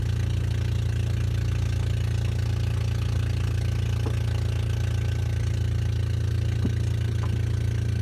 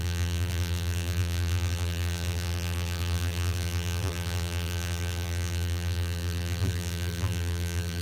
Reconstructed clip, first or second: second